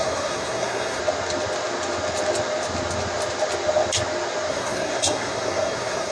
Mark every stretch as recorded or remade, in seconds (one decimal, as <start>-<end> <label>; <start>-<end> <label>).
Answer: 0.0-1.0 remade; 1.0-4.5 recorded; 4.5-6.1 remade